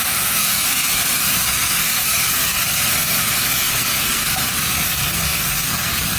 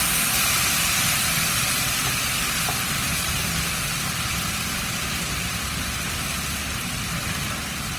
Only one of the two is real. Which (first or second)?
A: second